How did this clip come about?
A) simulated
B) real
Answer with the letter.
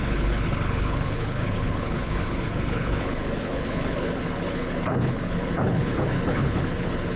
A